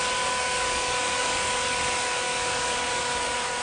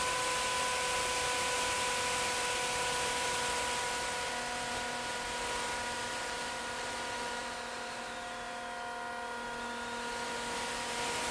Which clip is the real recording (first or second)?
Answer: second